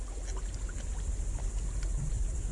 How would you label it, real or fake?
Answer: real